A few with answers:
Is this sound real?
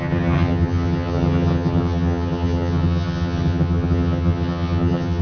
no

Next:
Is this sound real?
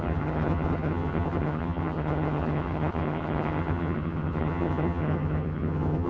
no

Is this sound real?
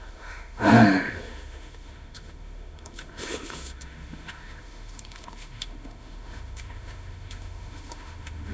no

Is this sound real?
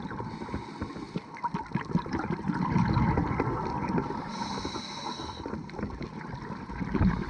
yes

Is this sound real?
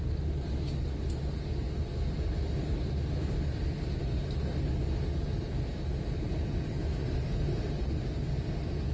yes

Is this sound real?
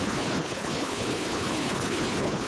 no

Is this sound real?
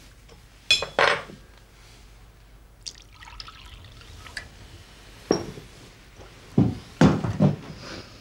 yes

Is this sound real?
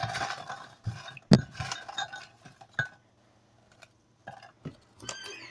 yes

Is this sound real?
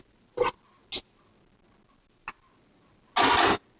yes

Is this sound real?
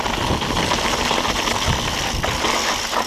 yes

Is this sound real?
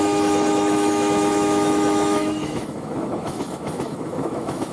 no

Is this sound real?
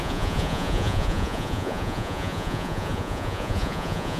no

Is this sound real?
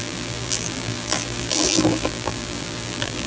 no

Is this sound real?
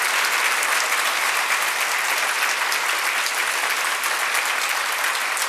yes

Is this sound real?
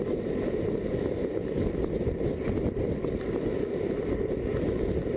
yes